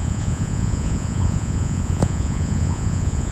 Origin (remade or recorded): remade